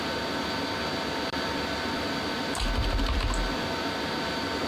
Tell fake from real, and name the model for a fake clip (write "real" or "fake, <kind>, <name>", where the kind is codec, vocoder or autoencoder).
real